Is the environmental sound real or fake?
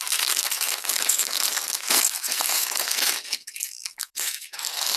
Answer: fake